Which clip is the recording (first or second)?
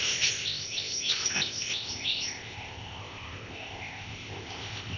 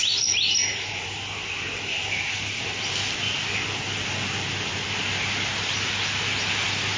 second